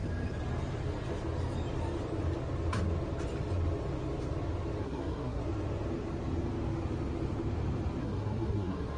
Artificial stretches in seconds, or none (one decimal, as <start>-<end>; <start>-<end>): 4.8-5.4; 8.0-9.0